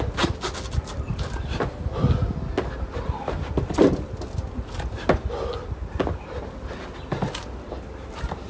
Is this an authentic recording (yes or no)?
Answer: yes